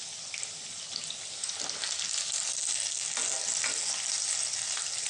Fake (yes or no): no